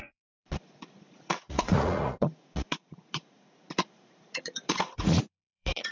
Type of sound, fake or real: fake